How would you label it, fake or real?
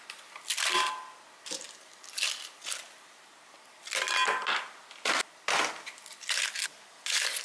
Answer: real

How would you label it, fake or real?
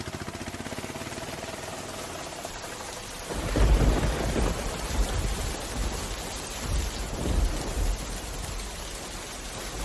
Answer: real